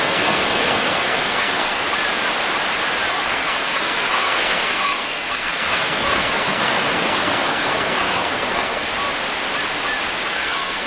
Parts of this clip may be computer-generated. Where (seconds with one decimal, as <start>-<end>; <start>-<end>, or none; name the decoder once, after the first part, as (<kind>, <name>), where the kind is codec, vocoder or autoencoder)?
0.0-1.8 (codec, SNAC); 3.1-8.9; 10.3-10.9